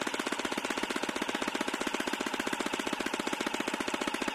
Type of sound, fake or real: real